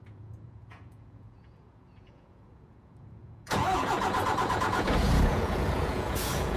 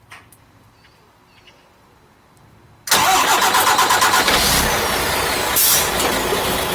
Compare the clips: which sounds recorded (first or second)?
second